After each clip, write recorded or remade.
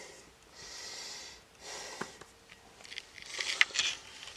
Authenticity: recorded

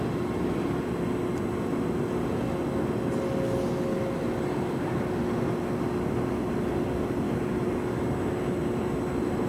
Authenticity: recorded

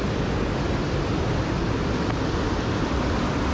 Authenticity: recorded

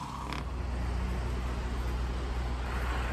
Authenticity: recorded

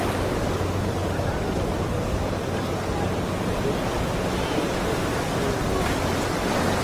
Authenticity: recorded